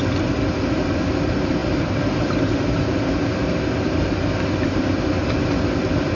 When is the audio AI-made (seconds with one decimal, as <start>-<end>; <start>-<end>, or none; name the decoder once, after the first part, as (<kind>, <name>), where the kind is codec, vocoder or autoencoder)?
none